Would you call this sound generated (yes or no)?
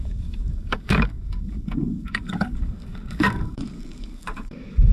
yes